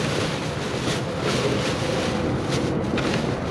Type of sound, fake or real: real